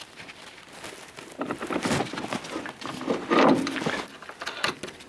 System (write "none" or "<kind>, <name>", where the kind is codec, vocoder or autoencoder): none